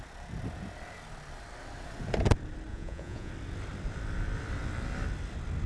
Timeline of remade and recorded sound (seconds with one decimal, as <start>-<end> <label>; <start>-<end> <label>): 0.0-2.7 recorded; 2.7-3.3 remade; 3.3-5.7 recorded